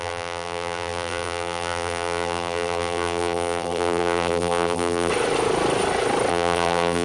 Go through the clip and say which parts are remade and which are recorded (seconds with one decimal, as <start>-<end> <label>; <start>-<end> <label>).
0.0-5.1 remade; 5.1-6.3 recorded; 6.3-7.0 remade